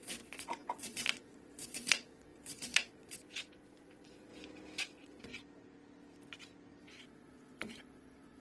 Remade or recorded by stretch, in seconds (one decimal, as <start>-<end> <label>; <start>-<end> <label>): 0.0-4.3 remade; 4.3-4.8 recorded; 4.8-5.3 remade; 5.3-6.8 recorded; 6.8-8.4 remade

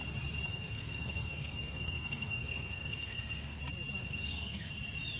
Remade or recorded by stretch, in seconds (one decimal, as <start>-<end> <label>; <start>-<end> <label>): 0.0-0.5 recorded; 0.5-3.6 remade; 3.6-4.0 recorded; 4.0-4.7 remade; 4.7-5.2 recorded

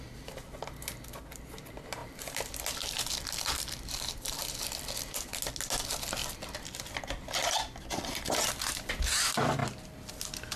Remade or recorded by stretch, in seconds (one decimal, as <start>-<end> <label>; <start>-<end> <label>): 0.0-2.0 recorded; 2.0-4.5 remade; 4.5-6.2 recorded; 6.2-9.0 remade; 9.0-10.6 recorded

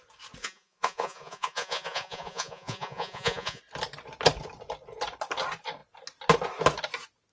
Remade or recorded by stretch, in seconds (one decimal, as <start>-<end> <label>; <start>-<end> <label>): 0.0-0.4 recorded; 0.4-3.6 remade; 3.6-7.3 recorded

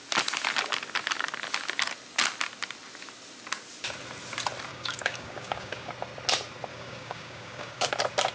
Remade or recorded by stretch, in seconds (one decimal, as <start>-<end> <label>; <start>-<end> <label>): 0.0-4.7 recorded; 4.7-5.9 remade; 5.9-6.7 recorded; 6.7-7.9 remade; 7.9-8.3 recorded

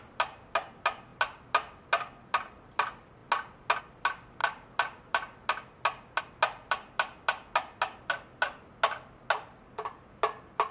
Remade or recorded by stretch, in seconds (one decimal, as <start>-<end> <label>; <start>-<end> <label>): 0.0-10.7 recorded